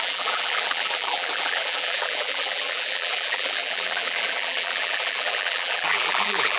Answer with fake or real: fake